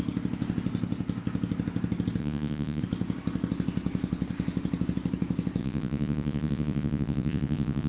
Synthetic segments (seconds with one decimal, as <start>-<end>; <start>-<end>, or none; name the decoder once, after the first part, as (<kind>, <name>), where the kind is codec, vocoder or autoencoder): 2.2-2.8 (vocoder, Vocos); 5.6-7.9